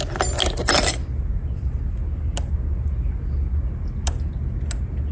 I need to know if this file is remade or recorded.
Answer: recorded